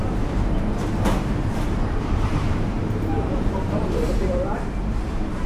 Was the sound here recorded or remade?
remade